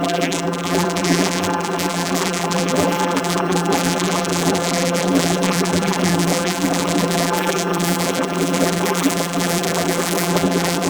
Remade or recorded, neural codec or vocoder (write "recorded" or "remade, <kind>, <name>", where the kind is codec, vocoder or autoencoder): remade, vocoder, BigVGAN v2